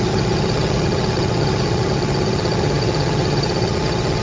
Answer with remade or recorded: remade